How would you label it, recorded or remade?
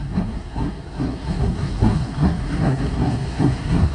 remade